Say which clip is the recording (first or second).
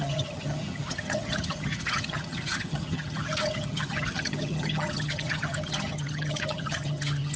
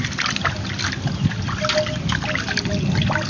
second